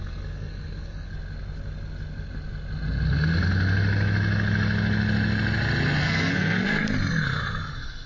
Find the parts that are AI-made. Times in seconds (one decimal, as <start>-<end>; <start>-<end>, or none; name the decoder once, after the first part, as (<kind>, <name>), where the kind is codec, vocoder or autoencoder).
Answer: 0.0-1.1 (codec, SNAC); 6.0-6.8